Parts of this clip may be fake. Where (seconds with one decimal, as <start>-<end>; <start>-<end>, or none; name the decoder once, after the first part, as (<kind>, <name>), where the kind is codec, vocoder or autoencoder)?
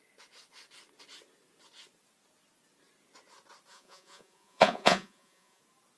3.7-5.6 (vocoder, Vocos)